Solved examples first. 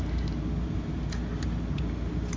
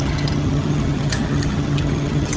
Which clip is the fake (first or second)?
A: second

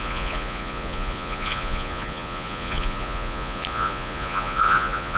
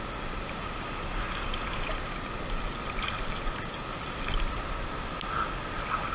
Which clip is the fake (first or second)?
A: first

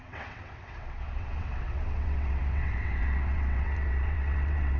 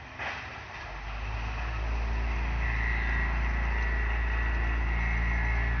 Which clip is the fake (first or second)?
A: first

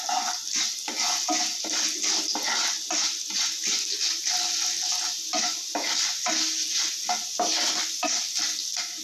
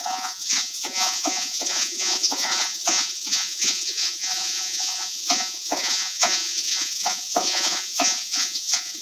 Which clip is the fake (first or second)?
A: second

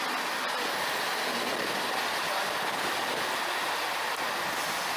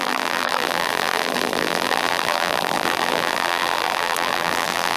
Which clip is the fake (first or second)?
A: second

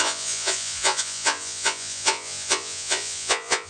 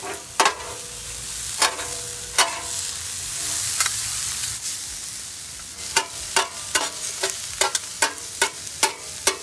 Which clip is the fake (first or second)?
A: first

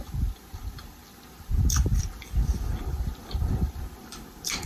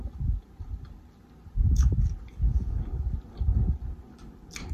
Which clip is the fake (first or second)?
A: first